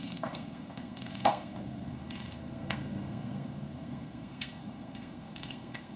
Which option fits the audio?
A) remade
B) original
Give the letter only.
A